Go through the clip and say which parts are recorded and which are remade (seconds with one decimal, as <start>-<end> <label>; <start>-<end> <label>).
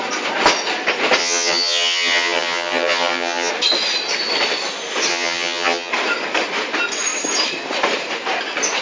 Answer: 0.0-1.2 recorded; 1.2-3.5 remade; 3.5-5.1 recorded; 5.1-5.9 remade; 5.9-8.8 recorded